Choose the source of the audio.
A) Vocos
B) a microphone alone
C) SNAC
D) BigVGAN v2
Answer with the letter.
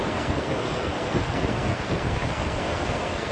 C